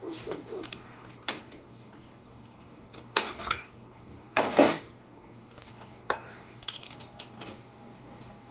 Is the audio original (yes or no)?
no